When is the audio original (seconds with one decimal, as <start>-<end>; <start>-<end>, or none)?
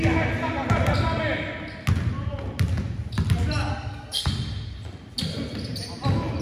0.0-3.7; 4.3-6.4